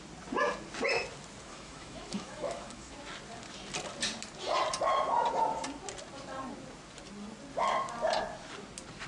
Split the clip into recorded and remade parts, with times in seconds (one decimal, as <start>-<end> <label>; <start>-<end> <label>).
0.0-1.5 recorded; 1.5-2.9 remade; 2.9-9.1 recorded